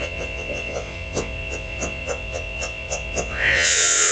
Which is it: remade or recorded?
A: remade